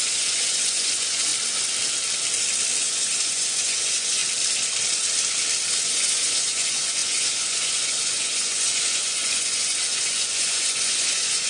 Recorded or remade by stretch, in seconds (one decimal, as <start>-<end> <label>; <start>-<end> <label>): 0.0-1.3 remade; 1.3-2.8 recorded; 2.8-4.2 remade; 4.2-5.8 recorded; 5.8-11.5 remade